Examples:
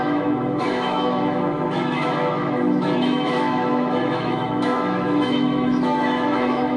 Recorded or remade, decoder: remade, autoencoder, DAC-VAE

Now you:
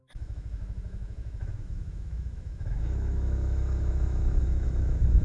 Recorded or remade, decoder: remade, autoencoder, DAC-VAE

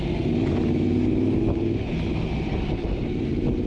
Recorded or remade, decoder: recorded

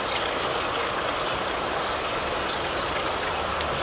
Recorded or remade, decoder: recorded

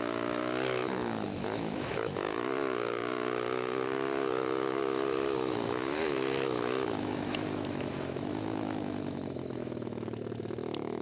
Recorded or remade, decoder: remade, autoencoder, DAC-VAE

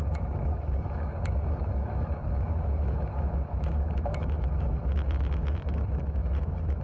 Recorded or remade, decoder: remade, autoencoder, DAC-VAE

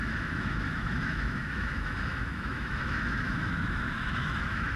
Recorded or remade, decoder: remade, autoencoder, DAC-VAE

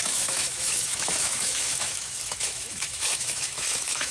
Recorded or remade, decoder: remade, autoencoder, DAC-VAE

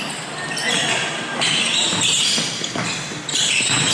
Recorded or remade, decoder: recorded